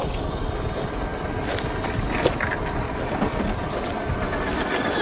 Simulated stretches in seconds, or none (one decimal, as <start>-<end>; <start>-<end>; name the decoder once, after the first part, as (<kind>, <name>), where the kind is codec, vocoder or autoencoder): none